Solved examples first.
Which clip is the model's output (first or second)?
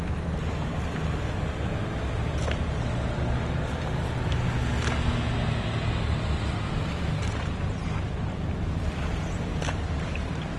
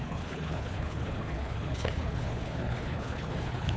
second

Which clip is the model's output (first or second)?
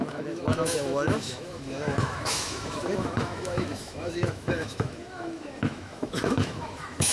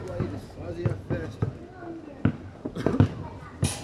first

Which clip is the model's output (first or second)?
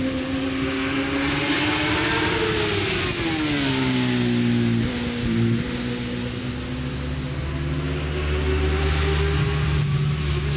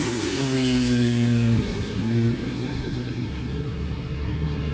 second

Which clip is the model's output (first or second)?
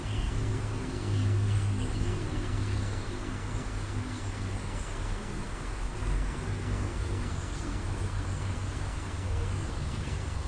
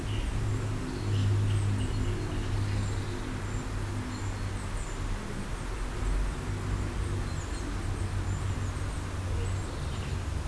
first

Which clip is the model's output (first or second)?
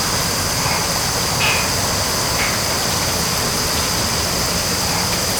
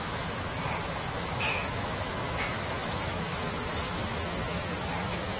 second